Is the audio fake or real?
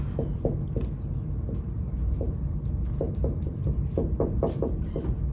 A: real